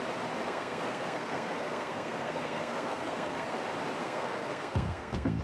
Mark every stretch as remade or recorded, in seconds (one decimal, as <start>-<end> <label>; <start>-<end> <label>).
0.0-0.4 recorded; 0.4-3.6 remade; 3.6-4.0 recorded; 4.0-5.4 remade

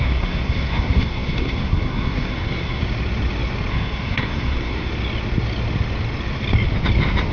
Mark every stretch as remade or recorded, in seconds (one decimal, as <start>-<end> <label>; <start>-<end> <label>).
0.0-2.8 remade; 2.8-3.7 recorded; 3.7-4.9 remade; 4.9-7.3 recorded

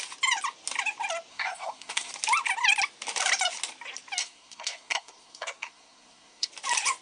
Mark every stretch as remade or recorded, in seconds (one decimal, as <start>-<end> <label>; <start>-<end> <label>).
0.0-1.3 recorded; 1.3-2.1 remade; 2.1-4.2 recorded; 4.2-6.5 remade; 6.5-7.0 recorded

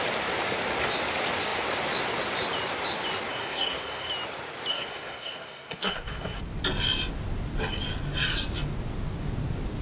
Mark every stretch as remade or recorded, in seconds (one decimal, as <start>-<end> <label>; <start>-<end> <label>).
0.0-3.3 recorded; 3.3-4.1 remade; 4.1-4.7 recorded; 4.7-6.4 remade; 6.4-9.8 recorded

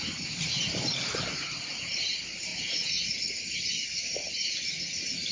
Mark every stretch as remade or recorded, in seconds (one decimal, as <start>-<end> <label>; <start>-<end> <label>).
0.0-5.3 recorded

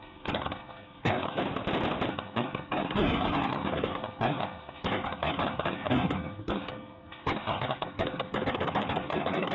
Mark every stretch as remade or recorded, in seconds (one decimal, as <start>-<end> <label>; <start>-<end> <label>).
0.0-1.4 remade; 1.4-2.1 recorded; 2.1-9.5 remade